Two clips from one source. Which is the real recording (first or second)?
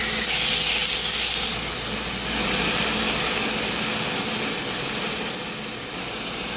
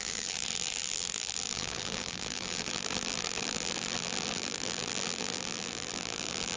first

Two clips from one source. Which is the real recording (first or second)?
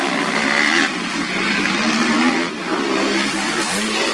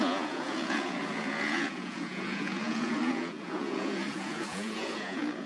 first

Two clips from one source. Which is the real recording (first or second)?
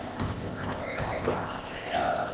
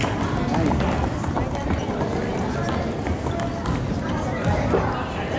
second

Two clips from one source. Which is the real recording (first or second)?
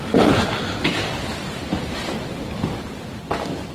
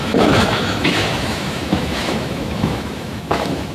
first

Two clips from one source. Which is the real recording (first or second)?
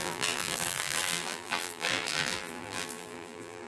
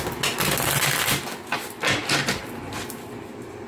second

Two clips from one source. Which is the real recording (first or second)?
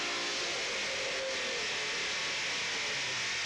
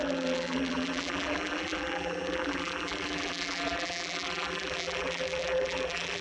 first